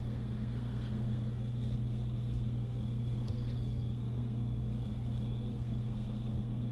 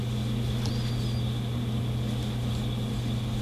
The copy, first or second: first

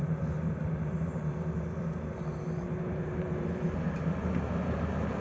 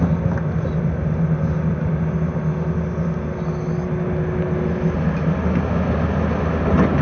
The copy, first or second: first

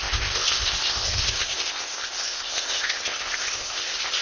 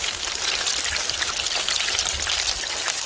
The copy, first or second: first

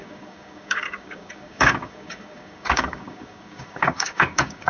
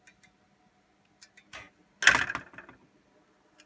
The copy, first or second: first